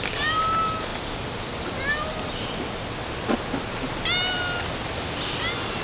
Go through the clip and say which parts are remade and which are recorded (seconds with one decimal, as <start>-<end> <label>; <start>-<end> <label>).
0.0-5.8 recorded